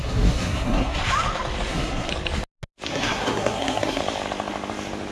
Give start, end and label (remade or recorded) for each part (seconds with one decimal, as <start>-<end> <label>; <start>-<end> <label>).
0.0-1.0 remade; 1.0-1.7 recorded; 1.7-2.1 remade; 2.1-2.9 recorded; 2.9-4.0 remade; 4.0-5.1 recorded